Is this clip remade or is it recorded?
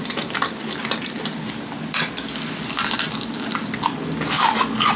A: recorded